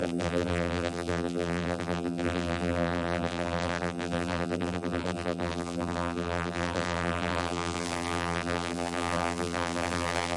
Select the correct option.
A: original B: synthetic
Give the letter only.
B